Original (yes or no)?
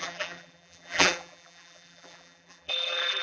no